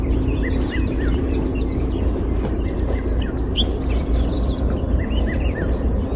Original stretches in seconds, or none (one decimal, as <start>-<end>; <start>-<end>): 1.5-4.0